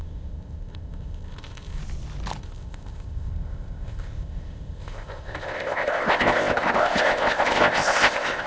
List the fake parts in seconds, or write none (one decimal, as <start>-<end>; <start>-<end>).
0.0-1.8; 2.4-8.5